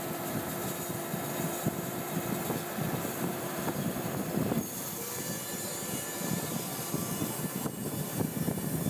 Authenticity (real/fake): fake